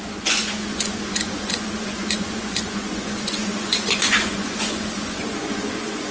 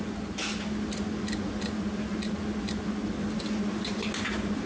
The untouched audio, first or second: second